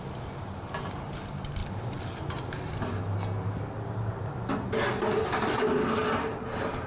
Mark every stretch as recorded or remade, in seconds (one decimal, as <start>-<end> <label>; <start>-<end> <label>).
0.0-6.9 recorded